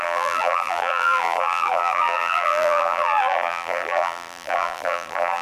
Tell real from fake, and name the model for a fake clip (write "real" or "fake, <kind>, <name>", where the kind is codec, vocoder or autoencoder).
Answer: fake, vocoder, BigVGAN v2